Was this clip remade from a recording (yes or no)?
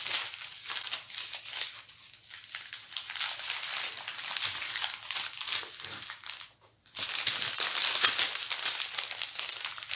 no